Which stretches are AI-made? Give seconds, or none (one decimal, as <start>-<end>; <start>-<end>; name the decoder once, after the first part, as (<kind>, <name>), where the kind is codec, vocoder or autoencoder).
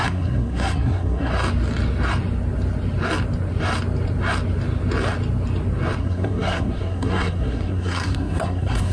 0.0-1.3 (codec, SNAC); 6.0-8.9